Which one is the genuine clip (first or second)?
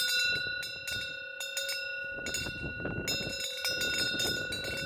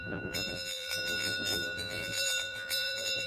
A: first